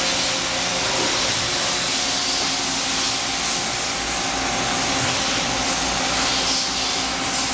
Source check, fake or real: real